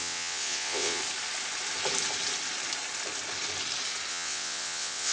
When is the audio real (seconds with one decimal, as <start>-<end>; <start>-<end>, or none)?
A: 1.0-4.1